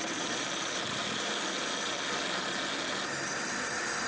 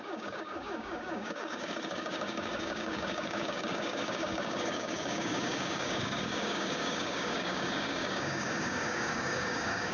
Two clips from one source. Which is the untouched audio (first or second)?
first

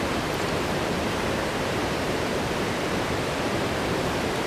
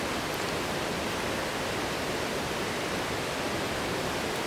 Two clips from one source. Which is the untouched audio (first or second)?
second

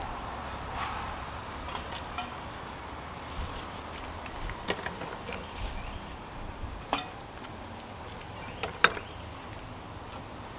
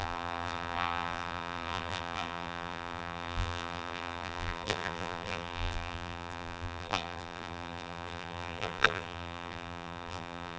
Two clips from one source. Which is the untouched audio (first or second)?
first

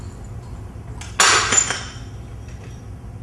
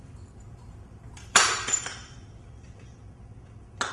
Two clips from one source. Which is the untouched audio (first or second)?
first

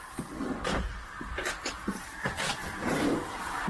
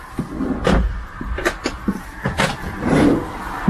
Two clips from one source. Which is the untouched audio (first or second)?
second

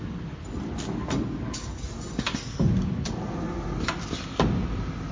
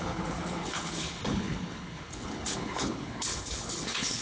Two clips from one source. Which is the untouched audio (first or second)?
first